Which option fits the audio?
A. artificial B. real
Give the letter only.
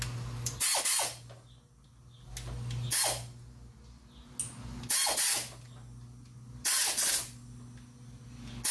B